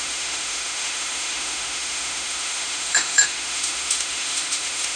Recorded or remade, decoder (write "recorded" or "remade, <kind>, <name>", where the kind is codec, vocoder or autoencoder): remade, autoencoder, DAC-VAE